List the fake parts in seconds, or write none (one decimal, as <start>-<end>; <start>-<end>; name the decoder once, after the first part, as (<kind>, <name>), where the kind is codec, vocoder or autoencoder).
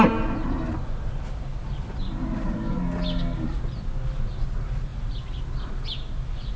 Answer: none